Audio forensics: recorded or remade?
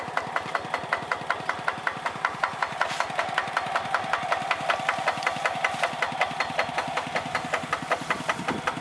recorded